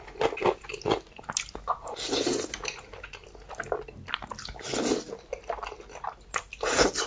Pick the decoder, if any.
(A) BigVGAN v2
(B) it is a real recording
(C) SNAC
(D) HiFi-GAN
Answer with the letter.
B